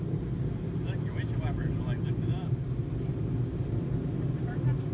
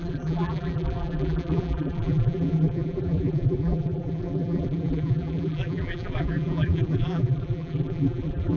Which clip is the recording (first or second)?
first